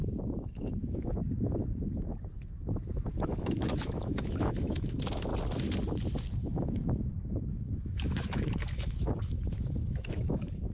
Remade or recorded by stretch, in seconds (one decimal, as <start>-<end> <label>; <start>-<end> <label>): 0.0-0.5 recorded; 0.5-1.2 remade; 1.2-1.8 recorded; 1.8-5.3 remade; 5.3-6.4 recorded; 6.4-10.7 remade